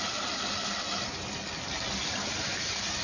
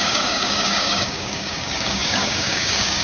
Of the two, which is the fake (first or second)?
second